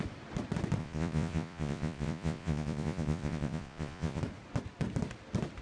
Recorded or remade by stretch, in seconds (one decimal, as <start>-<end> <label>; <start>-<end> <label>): 0.0-0.8 recorded; 0.8-4.2 remade; 4.2-5.6 recorded